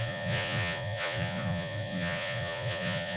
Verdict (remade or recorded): remade